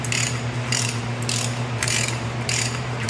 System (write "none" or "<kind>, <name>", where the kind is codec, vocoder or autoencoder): vocoder, BigVGAN v2